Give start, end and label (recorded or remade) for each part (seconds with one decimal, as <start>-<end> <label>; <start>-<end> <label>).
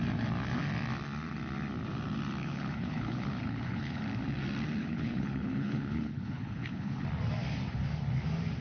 0.0-2.4 recorded; 2.4-4.0 remade; 4.0-4.8 recorded; 4.8-7.0 remade; 7.0-8.6 recorded